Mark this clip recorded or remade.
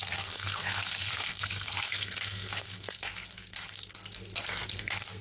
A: remade